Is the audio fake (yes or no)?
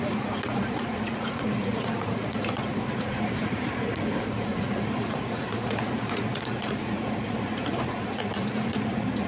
yes